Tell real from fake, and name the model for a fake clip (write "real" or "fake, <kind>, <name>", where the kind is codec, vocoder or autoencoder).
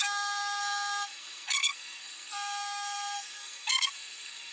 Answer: fake, codec, SNAC